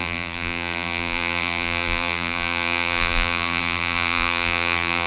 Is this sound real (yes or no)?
no